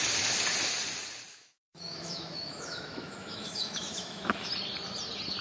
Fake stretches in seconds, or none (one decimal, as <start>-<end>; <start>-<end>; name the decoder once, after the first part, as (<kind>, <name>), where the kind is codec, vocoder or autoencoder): 1.3-4.5 (autoencoder, DAC-VAE)